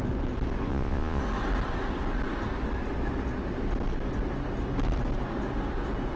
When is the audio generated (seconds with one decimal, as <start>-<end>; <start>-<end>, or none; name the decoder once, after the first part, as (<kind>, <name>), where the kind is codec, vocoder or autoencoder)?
0.7-1.2 (vocoder, Vocos)